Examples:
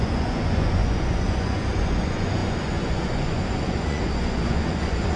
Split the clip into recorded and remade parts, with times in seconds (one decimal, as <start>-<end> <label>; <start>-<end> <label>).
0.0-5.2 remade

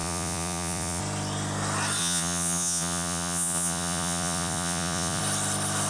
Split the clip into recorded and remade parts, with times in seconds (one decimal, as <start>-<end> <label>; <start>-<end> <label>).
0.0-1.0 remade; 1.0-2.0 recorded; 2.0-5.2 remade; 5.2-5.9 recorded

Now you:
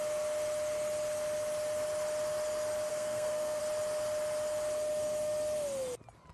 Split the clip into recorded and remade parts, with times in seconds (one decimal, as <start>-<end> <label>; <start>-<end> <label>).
0.0-2.9 recorded; 2.9-3.6 remade; 3.6-6.3 recorded

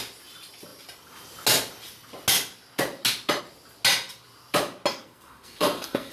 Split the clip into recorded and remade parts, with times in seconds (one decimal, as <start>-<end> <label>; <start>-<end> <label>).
0.0-4.9 recorded; 4.9-6.1 remade

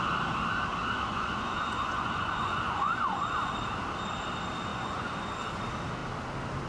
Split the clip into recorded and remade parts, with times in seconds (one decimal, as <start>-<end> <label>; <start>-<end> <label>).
0.0-1.1 recorded; 1.1-3.5 remade; 3.5-4.7 recorded; 4.7-5.5 remade; 5.5-6.7 recorded